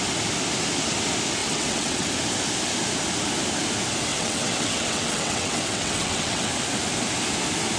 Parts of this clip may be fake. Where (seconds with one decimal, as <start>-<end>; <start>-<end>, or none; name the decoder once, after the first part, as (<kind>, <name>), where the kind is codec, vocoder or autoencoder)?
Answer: 1.4-2.1 (vocoder, WaveNeXt); 4.1-6.5